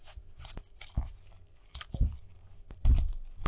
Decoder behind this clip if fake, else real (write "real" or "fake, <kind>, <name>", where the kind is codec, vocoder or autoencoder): real